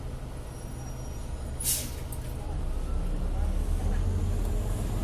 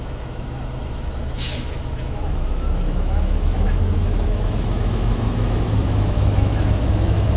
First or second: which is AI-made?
second